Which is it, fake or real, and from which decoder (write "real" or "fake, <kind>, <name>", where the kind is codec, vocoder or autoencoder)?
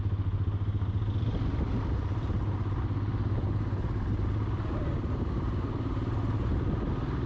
real